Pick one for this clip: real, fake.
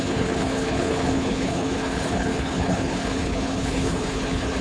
fake